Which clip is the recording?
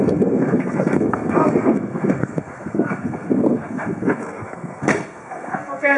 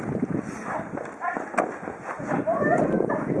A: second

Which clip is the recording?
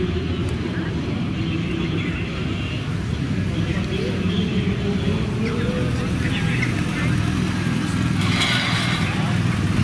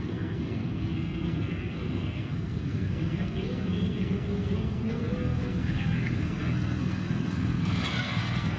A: first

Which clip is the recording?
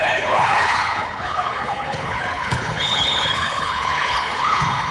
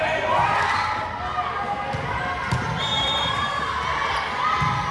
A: second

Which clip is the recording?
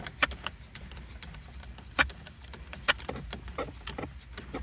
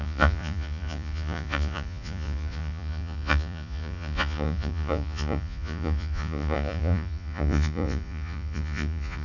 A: first